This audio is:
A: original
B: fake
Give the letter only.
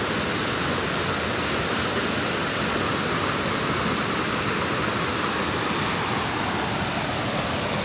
A